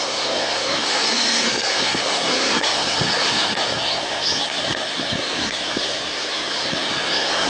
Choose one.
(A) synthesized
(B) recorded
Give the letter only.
A